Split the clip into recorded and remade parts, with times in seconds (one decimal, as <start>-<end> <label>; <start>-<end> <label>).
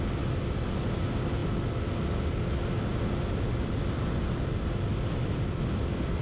0.0-6.2 recorded